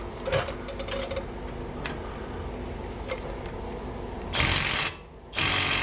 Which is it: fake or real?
real